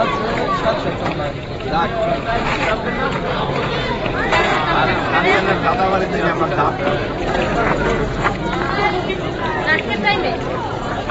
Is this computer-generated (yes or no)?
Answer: yes